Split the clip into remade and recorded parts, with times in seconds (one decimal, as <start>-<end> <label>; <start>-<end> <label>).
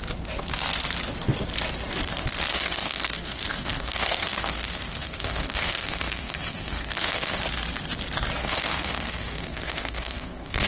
0.0-2.5 recorded; 2.5-7.4 remade; 7.4-8.4 recorded; 8.4-10.7 remade